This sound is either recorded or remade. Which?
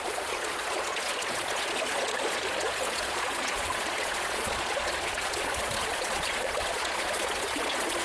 remade